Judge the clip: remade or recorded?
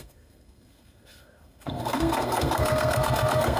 remade